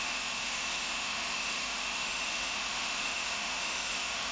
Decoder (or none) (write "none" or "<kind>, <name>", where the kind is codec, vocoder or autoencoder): autoencoder, DAC-VAE